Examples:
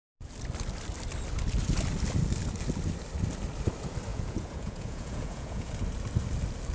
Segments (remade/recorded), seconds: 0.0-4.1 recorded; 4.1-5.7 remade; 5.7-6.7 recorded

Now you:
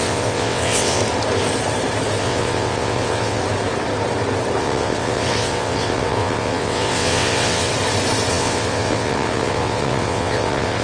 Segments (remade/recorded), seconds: 0.0-1.0 remade; 1.0-2.2 recorded; 2.2-3.4 remade; 3.4-4.6 recorded; 4.6-7.7 remade; 7.7-8.3 recorded; 8.3-10.8 remade